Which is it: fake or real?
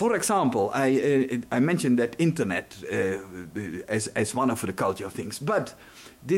fake